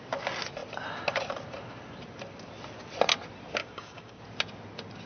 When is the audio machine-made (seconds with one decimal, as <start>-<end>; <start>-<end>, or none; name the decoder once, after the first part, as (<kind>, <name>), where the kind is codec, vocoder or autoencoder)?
3.6-4.2 (codec, DAC)